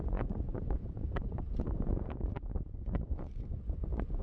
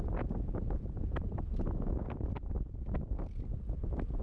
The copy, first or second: first